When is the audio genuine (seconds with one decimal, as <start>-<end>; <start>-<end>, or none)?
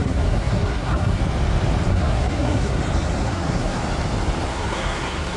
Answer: 1.2-1.9; 2.8-3.2; 3.8-4.5